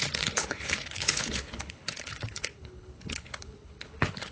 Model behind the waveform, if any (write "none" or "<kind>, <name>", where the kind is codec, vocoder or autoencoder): codec, HILCodec